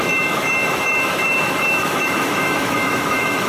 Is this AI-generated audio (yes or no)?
yes